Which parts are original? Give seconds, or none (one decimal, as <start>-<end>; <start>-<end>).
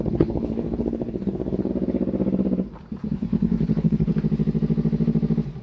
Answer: 1.7-3.1; 4.1-5.6